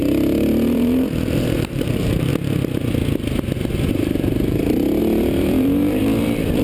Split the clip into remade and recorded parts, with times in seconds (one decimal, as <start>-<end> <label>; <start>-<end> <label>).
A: 0.0-2.3 remade; 2.3-3.9 recorded; 3.9-6.6 remade